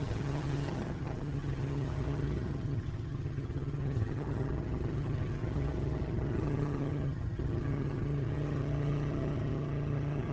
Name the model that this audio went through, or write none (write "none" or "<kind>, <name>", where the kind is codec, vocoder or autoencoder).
vocoder, HiFi-GAN